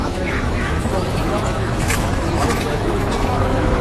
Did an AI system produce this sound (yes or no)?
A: yes